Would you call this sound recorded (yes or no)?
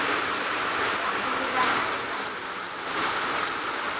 yes